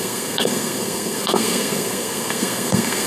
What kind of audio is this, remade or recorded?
remade